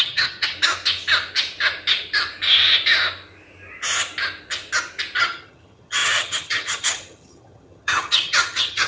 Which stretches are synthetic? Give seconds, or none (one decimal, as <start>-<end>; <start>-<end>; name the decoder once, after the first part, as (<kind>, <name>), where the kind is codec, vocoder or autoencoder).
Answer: 0.0-0.5 (vocoder, HiFi-GAN); 5.2-8.9